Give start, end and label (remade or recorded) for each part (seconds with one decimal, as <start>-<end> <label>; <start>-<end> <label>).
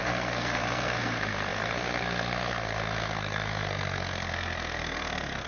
0.0-5.5 remade